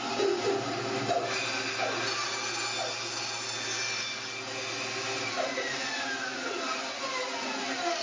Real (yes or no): yes